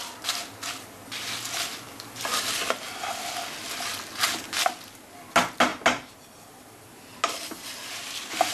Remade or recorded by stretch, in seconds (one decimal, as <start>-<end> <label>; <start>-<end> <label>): 0.0-8.5 recorded